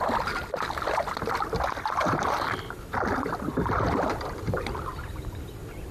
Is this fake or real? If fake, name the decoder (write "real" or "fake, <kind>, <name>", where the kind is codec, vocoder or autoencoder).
real